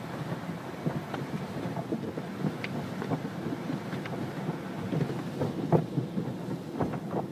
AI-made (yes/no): no